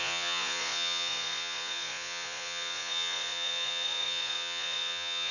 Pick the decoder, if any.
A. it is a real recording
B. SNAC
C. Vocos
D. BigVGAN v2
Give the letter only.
C